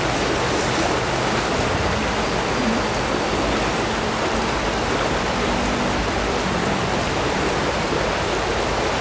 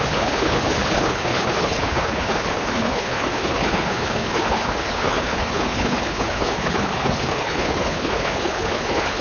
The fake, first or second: second